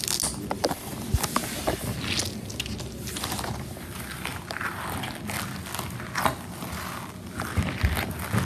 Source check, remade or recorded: recorded